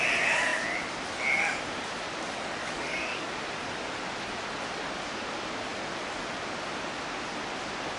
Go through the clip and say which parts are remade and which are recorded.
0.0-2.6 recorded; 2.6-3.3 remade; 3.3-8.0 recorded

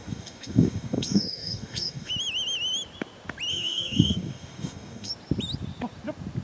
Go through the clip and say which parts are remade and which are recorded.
0.0-2.1 remade; 2.1-3.5 recorded; 3.5-5.1 remade; 5.1-6.4 recorded